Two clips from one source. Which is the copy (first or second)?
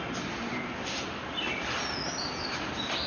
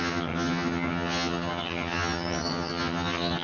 second